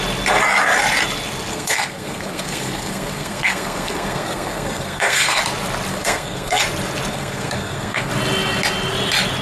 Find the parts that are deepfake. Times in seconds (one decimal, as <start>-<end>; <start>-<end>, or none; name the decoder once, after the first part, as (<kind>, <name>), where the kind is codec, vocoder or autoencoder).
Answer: 1.5-5.4 (codec, SNAC); 5.9-6.6; 7.1-8.1